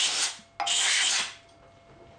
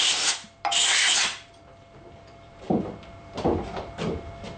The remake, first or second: second